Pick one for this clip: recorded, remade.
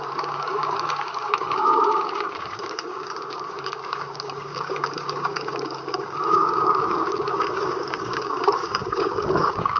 remade